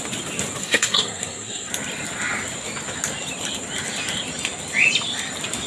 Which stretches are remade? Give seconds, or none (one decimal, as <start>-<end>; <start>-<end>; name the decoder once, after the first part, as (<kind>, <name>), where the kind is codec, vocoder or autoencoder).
0.6-1.7 (codec, SNAC)